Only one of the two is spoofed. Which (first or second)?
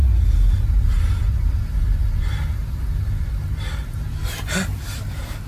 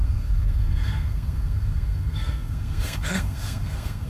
second